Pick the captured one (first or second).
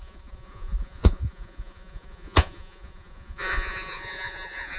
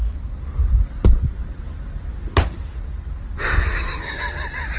second